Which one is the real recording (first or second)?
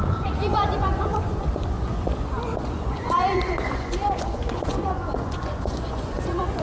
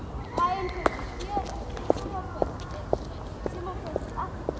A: second